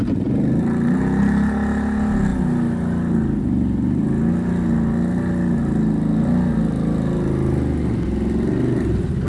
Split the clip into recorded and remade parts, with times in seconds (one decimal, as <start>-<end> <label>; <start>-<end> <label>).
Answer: 0.0-9.3 recorded